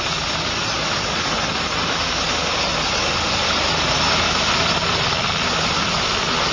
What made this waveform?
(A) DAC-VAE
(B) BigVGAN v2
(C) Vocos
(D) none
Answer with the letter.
D